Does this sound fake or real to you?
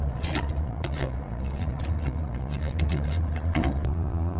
fake